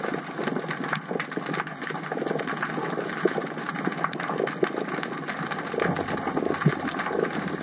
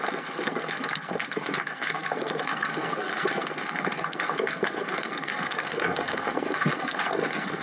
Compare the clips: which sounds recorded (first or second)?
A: first